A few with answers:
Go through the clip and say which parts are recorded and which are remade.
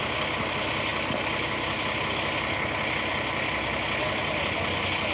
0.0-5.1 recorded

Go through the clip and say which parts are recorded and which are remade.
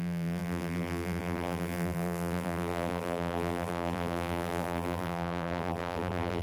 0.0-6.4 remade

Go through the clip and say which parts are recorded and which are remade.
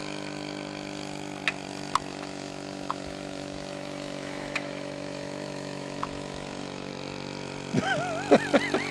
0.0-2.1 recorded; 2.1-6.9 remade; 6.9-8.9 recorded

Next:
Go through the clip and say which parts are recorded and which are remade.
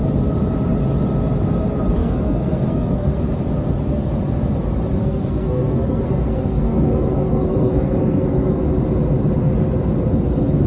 0.0-2.0 recorded; 2.0-3.2 remade; 3.2-5.0 recorded; 5.0-8.6 remade; 8.6-10.7 recorded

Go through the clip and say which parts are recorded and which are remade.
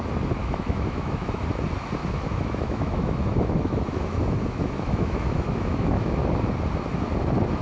0.0-0.4 recorded; 0.4-1.4 remade; 1.4-2.0 recorded; 2.0-6.2 remade; 6.2-7.6 recorded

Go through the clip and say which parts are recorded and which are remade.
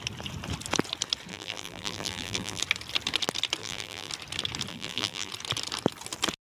0.0-1.3 recorded; 1.3-2.6 remade; 2.6-3.6 recorded; 3.6-4.1 remade; 4.1-4.7 recorded; 4.7-5.3 remade; 5.3-6.4 recorded